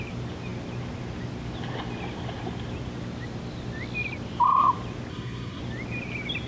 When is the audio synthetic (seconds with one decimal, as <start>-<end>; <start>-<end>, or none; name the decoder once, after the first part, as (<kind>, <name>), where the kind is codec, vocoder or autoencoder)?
5.1-5.6 (codec, SNAC)